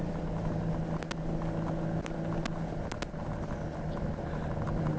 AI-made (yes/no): no